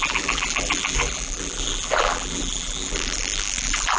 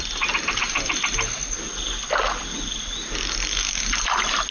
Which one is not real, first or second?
first